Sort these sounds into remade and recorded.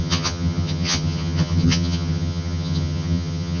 remade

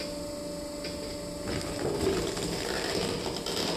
recorded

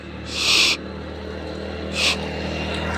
recorded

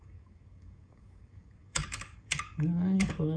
remade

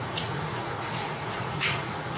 remade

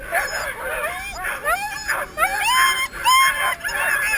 recorded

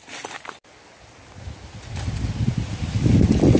recorded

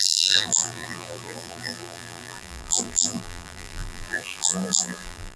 remade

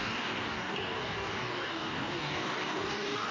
remade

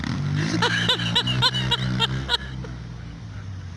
recorded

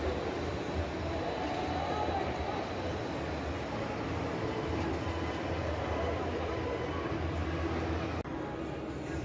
recorded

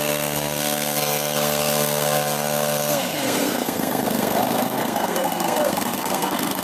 remade